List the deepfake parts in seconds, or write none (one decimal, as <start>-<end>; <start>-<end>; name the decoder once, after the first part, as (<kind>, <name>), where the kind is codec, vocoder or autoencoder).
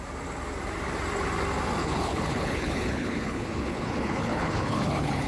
1.8-5.3 (codec, HILCodec)